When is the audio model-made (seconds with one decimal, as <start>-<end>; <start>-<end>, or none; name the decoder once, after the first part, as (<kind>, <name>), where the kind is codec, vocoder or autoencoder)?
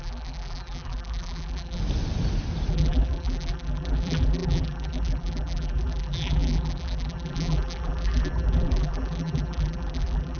0.0-1.8 (vocoder, BigVGAN v2); 2.7-10.4